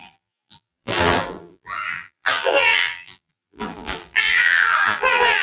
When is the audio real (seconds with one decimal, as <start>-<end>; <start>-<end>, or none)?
none